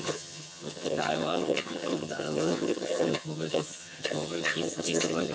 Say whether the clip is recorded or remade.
remade